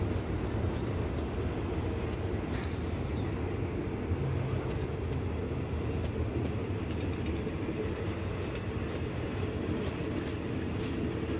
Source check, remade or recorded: recorded